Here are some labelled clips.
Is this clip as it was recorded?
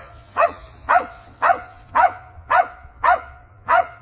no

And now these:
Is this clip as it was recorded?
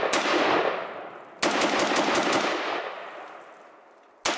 yes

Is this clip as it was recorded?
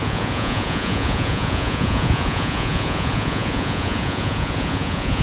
no